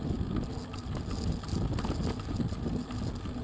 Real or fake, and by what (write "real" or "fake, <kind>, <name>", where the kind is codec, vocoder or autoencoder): real